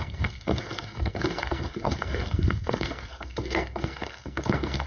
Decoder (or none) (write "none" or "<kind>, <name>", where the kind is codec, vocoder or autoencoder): codec, SNAC